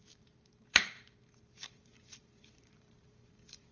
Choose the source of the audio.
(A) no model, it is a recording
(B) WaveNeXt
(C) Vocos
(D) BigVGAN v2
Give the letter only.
D